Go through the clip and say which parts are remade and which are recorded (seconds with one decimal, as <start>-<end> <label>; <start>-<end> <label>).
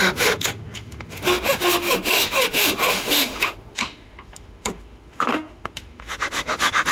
0.0-6.9 remade